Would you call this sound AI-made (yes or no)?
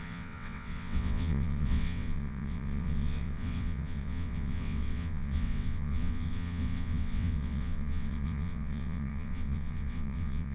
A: yes